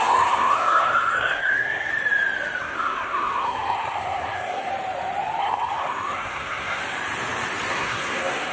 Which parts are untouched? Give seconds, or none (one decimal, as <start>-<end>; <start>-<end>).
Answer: 1.9-2.6; 4.7-5.4; 6.8-7.7